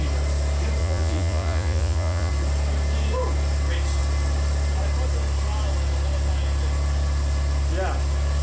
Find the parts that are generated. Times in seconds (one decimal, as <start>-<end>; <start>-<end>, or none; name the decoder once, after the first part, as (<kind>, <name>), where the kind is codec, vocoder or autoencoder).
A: 0.8-2.3 (vocoder, Vocos)